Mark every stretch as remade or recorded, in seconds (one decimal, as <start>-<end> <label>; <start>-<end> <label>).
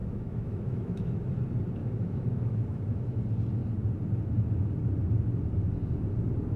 0.0-1.3 remade; 1.3-1.8 recorded; 1.8-3.2 remade; 3.2-6.6 recorded